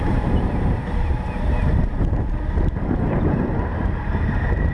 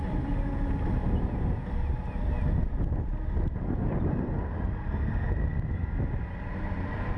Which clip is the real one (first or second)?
second